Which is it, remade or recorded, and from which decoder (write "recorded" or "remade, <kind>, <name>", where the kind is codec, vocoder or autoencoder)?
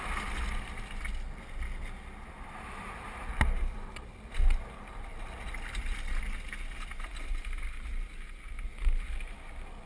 recorded